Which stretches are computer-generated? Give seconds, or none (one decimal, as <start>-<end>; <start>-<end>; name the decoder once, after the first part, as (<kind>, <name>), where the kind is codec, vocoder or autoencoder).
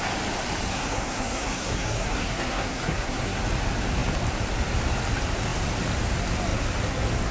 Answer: 0.7-3.4 (codec, SNAC)